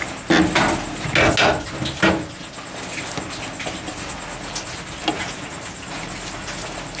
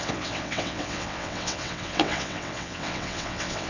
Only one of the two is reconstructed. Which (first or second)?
second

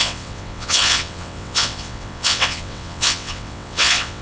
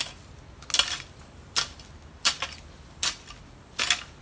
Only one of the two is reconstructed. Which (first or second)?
first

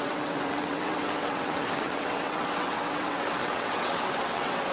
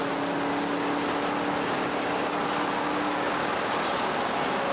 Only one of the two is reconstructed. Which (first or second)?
first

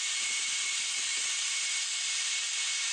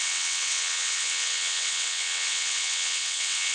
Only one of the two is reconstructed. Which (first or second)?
second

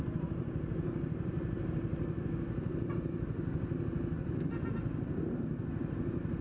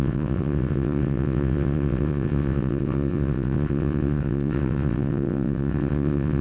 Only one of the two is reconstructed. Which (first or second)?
second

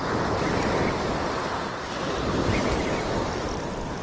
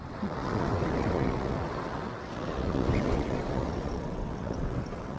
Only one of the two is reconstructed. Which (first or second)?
second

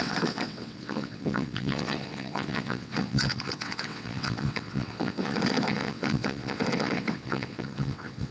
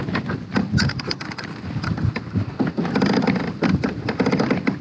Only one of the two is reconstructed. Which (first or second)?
first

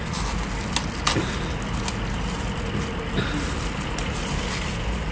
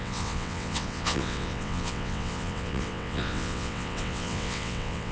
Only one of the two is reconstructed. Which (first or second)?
second